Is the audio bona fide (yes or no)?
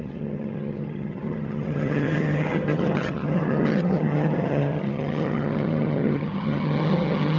no